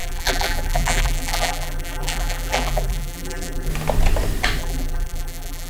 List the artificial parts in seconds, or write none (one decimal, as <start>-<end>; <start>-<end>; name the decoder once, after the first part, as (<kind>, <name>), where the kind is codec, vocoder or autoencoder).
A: 0.0-3.7 (vocoder, BigVGAN v2); 4.6-5.7